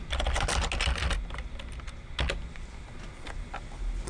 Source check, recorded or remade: recorded